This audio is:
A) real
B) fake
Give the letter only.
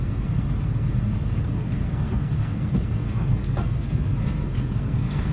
B